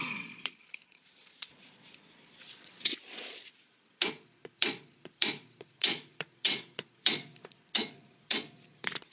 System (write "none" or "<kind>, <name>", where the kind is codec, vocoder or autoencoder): vocoder, Vocos